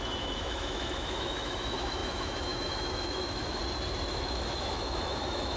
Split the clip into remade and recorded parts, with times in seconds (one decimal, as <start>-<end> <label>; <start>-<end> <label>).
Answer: 0.0-3.6 remade; 3.6-4.1 recorded; 4.1-5.6 remade